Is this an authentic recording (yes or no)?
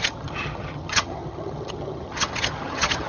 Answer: no